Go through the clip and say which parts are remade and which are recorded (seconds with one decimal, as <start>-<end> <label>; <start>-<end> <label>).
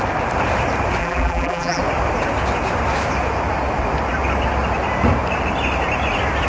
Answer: 0.0-1.0 recorded; 1.0-1.8 remade; 1.8-6.5 recorded